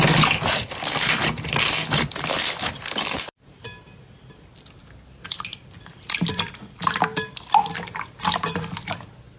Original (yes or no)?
yes